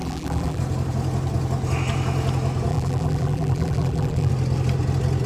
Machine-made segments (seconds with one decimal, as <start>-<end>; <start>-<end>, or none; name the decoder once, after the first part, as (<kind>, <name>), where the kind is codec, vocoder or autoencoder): 0.0-0.6 (vocoder, BigVGAN v2); 2.7-4.3